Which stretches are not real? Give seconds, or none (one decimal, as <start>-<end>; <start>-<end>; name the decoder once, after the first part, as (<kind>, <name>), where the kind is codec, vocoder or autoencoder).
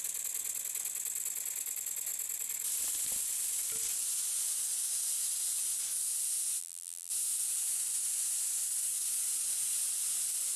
6.6-7.1 (vocoder, BigVGAN v2)